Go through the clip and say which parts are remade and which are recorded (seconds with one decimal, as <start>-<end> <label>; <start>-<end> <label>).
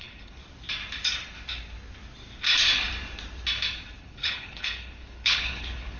0.0-0.4 remade; 0.4-4.0 recorded; 4.0-6.0 remade